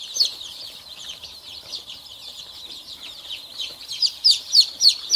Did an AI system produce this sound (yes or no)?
yes